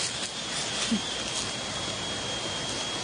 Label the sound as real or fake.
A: real